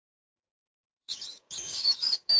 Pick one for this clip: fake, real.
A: fake